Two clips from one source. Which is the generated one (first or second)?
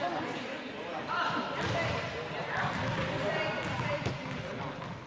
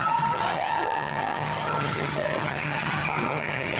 second